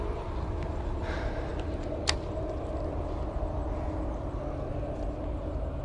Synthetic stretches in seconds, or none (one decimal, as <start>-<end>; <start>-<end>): none